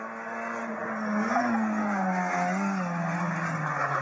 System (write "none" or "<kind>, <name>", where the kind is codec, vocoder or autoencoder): none